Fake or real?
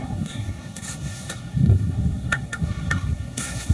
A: fake